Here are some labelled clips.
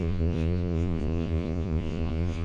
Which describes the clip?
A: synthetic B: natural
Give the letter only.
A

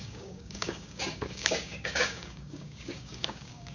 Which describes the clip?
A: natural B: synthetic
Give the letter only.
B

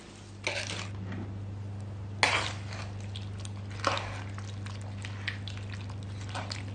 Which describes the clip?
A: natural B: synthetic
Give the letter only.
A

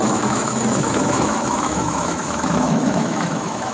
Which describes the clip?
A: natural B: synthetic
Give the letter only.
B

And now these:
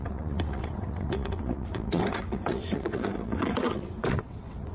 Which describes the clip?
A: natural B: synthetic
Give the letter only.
B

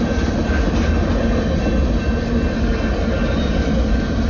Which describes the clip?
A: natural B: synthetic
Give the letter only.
A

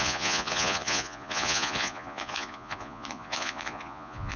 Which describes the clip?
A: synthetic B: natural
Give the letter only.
A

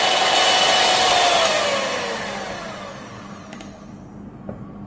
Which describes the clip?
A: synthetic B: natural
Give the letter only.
B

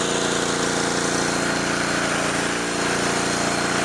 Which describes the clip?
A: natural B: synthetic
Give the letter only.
A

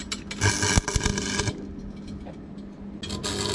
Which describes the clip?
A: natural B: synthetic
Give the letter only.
A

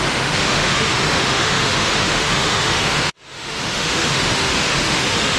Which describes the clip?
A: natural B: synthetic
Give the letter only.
B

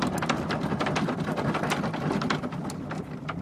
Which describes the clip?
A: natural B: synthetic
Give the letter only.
A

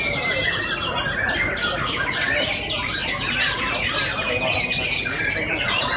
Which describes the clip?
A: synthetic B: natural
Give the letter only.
B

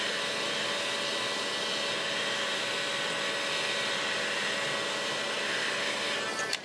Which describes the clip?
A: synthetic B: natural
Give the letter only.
B